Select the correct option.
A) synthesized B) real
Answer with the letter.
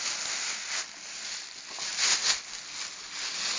B